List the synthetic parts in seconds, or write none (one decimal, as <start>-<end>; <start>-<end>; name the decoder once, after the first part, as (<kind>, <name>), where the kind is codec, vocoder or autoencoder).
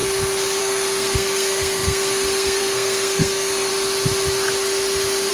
0.6-3.7 (codec, SNAC)